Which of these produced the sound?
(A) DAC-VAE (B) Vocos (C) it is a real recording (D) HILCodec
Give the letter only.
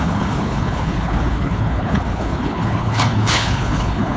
D